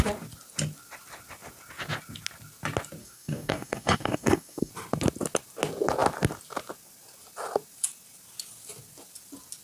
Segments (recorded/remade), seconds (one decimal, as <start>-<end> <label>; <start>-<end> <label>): 0.0-3.0 recorded; 3.0-4.7 remade; 4.7-9.6 recorded